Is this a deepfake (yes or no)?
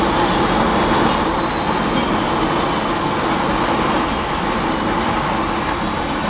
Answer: no